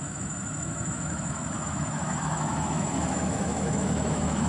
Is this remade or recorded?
remade